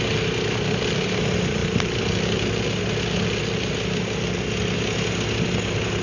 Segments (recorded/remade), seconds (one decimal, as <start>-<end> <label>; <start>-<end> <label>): 0.0-6.0 recorded